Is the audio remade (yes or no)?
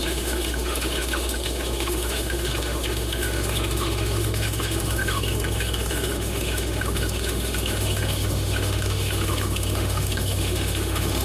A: yes